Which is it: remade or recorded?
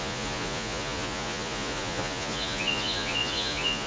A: remade